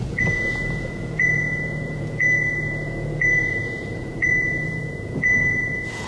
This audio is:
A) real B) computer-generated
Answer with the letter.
B